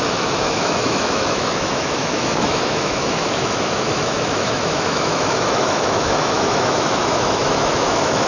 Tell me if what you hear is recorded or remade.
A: remade